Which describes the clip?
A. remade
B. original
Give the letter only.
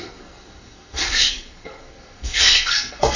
A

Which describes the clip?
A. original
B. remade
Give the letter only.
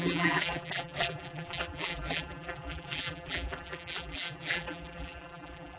B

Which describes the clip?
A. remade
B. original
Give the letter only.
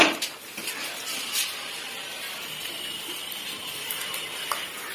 A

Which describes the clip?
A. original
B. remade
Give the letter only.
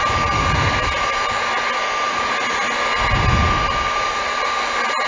A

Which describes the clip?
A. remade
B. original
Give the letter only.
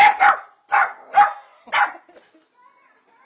B